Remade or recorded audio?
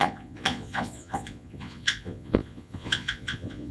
remade